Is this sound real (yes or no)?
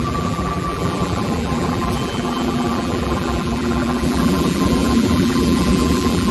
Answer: no